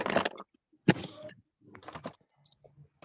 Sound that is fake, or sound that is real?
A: real